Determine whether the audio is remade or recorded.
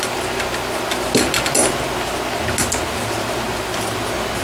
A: recorded